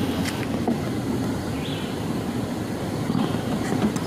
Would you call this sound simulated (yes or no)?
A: no